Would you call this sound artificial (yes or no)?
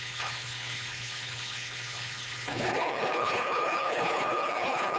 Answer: yes